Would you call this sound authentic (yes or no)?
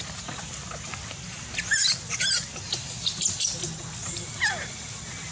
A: yes